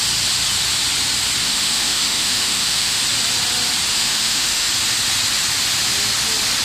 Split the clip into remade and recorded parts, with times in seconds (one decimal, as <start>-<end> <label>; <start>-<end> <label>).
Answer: 0.0-1.4 recorded; 1.4-3.0 remade; 3.0-3.9 recorded; 3.9-4.7 remade; 4.7-6.6 recorded